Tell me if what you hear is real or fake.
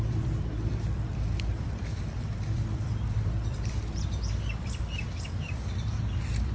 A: fake